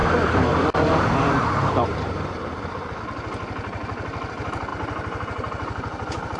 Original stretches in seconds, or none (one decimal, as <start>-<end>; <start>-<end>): 3.0-4.7